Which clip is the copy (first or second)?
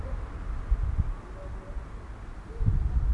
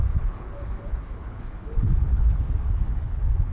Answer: second